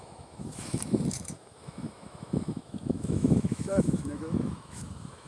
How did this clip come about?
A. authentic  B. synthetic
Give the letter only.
B